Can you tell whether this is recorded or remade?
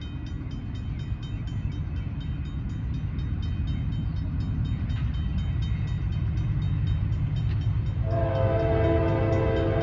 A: recorded